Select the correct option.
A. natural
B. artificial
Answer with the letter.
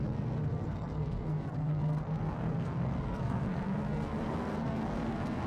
B